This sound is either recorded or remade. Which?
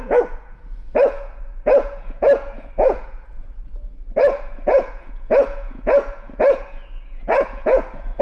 remade